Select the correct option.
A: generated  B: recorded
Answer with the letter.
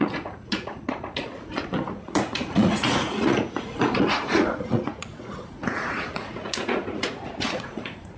A